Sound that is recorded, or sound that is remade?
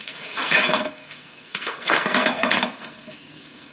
remade